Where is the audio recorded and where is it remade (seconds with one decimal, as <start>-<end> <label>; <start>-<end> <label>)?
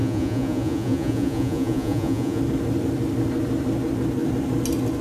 0.0-2.4 remade; 2.4-5.0 recorded